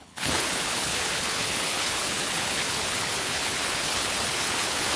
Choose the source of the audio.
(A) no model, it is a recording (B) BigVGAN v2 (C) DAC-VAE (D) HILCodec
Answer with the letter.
D